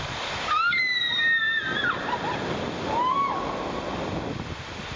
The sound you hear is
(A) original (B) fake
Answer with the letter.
A